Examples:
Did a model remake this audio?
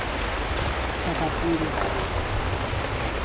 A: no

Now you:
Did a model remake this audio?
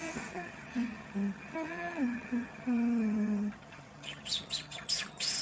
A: yes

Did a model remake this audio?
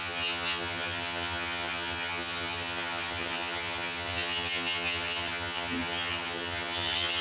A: yes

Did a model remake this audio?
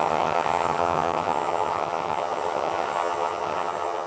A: yes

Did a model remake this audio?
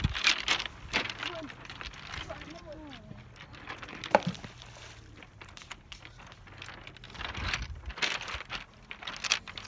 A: no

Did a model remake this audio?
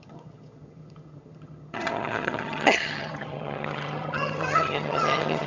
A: yes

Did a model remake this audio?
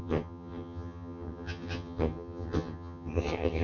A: yes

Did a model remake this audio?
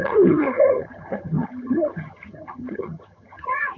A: yes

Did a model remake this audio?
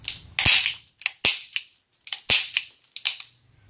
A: no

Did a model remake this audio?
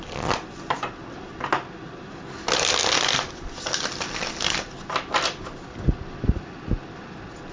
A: no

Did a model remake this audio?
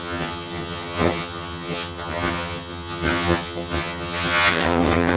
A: yes